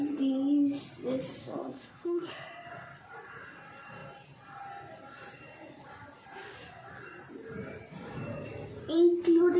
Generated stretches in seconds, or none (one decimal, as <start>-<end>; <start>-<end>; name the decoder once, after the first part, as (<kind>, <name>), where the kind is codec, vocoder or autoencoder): 1.4-2.3 (codec, SNAC)